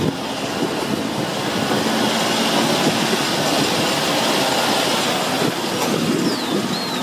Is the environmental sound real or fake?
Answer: real